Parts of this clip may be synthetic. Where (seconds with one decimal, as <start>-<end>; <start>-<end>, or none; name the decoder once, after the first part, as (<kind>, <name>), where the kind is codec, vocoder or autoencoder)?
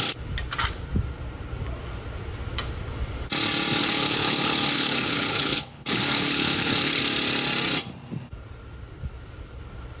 3.8-7.0 (codec, HILCodec)